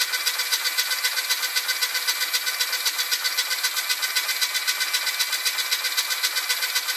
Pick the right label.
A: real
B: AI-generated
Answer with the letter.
A